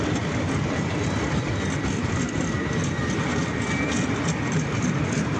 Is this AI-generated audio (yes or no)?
yes